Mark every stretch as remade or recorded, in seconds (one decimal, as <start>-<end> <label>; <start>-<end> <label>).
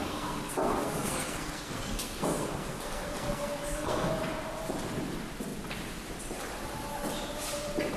0.0-4.1 remade; 4.1-8.0 recorded